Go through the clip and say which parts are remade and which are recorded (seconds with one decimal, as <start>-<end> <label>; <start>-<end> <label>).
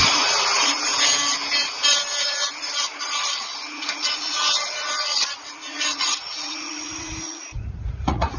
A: 0.0-0.9 remade; 0.9-2.2 recorded; 2.2-8.4 remade